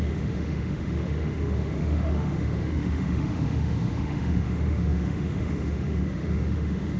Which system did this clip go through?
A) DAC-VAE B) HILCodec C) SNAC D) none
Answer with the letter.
A